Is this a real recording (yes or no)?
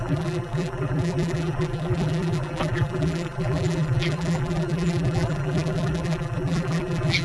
no